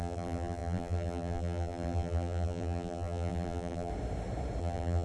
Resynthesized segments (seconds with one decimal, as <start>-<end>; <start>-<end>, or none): 0.0-3.9; 4.6-5.0